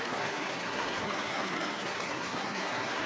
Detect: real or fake fake